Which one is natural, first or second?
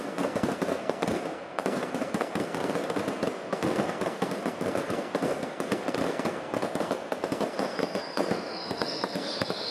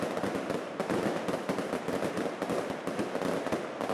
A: second